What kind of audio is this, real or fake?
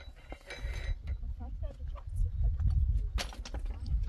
real